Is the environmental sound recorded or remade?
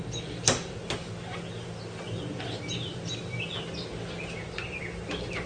recorded